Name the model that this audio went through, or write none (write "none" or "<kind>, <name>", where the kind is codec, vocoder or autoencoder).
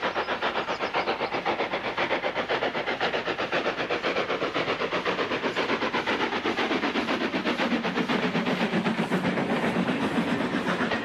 none